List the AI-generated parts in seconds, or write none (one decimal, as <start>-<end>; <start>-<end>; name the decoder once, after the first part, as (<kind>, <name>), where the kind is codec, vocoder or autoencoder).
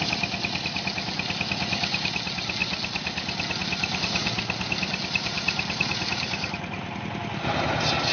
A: none